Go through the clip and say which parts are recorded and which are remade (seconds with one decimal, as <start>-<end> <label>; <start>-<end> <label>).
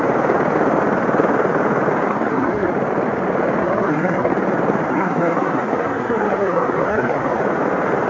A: 0.0-2.1 recorded; 2.1-2.7 remade; 2.7-3.6 recorded; 3.6-4.3 remade; 4.3-4.9 recorded; 4.9-7.4 remade; 7.4-8.1 recorded